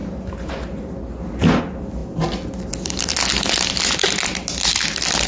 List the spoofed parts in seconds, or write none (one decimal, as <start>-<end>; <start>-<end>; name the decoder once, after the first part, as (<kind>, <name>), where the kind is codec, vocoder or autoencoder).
none